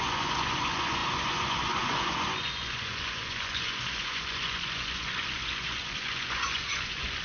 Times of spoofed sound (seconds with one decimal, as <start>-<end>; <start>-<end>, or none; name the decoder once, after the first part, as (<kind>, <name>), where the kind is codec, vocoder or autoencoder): 0.0-7.2 (vocoder, Vocos)